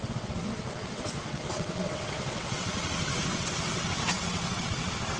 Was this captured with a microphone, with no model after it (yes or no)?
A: no